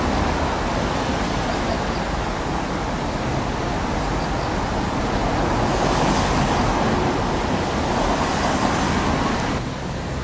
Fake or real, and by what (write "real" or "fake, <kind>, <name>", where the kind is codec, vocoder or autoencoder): real